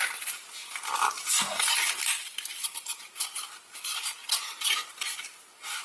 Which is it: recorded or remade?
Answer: recorded